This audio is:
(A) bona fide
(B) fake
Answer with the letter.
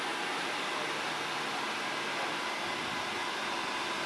A